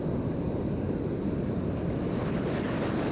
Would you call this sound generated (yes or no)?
no